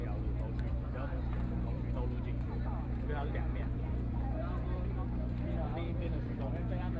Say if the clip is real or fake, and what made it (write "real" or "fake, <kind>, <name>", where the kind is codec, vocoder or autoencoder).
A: fake, vocoder, BigVGAN v2